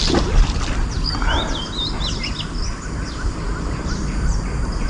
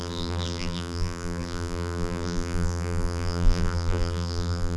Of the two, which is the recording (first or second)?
first